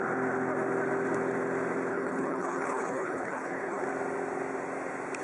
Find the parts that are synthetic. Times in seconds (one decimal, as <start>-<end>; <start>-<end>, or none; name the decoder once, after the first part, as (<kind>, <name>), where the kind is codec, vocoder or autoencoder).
1.9-3.8 (codec, HILCodec)